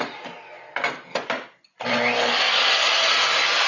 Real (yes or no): yes